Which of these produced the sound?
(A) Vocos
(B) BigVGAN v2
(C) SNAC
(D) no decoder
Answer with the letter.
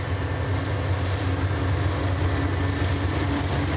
D